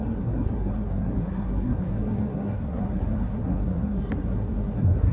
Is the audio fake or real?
fake